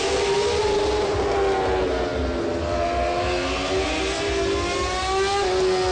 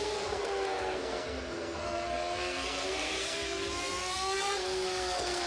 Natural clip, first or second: first